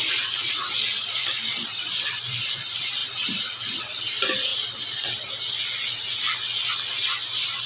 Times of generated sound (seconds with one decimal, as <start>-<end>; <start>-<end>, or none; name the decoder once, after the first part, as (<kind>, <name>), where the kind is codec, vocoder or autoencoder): 0.0-4.5 (vocoder, BigVGAN v2)